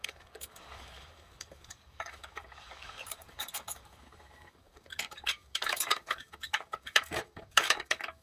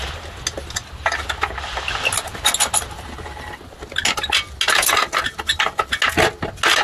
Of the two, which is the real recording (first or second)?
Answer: second